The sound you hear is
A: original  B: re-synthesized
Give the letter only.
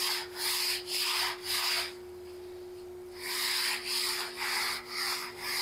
A